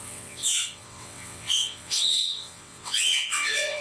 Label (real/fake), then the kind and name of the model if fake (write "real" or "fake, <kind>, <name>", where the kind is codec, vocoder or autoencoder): fake, vocoder, WaveNeXt